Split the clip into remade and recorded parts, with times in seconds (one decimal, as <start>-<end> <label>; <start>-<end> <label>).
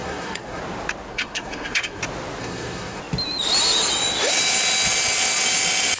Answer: 0.0-0.6 remade; 0.6-1.1 recorded; 1.1-2.0 remade; 2.0-2.4 recorded; 2.4-3.0 remade; 3.0-6.0 recorded